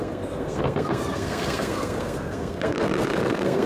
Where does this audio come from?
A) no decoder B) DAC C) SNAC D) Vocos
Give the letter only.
C